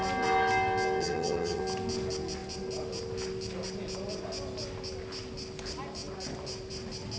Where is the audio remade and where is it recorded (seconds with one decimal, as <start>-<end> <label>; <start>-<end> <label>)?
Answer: 0.0-1.0 recorded; 1.0-1.6 remade; 1.6-7.2 recorded